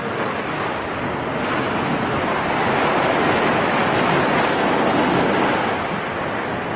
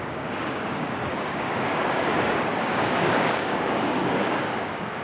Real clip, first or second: first